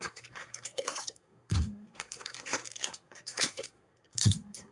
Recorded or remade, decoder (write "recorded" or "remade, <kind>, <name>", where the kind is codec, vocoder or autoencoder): remade, codec, SNAC